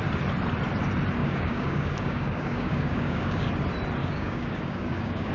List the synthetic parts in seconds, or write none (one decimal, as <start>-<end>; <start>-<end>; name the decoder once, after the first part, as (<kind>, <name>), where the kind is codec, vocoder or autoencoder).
1.2-3.5 (codec, DAC); 4.0-5.3